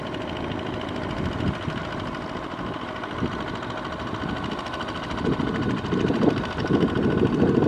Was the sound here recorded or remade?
recorded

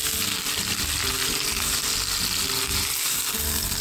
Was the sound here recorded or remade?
recorded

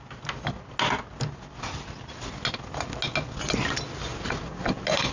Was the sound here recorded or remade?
recorded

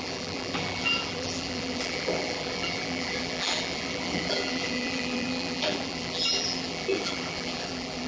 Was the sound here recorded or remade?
remade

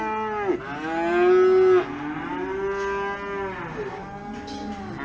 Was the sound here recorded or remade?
recorded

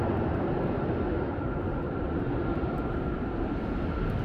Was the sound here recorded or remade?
recorded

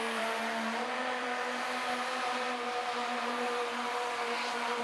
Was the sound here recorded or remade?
remade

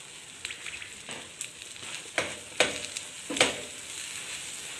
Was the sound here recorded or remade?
recorded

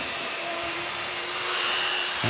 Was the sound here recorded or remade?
remade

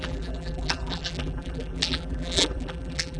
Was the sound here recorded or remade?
remade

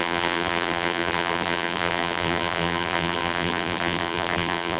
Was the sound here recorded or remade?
remade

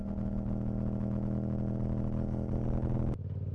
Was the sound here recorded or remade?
recorded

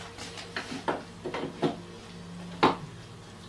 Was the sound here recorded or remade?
recorded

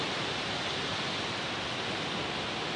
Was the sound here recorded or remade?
recorded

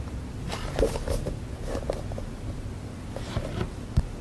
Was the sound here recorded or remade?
recorded